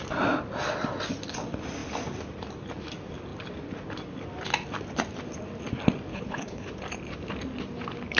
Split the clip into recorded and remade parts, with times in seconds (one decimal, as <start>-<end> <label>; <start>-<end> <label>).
0.0-6.1 recorded; 6.1-6.7 remade; 6.7-8.2 recorded